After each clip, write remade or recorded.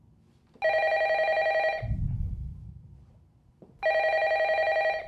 recorded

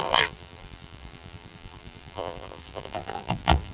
remade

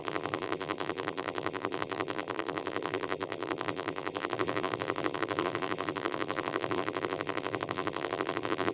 remade